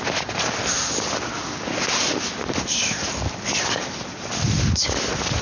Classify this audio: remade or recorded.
recorded